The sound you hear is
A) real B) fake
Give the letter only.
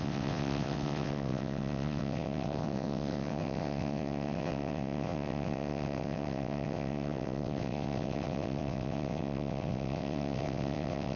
B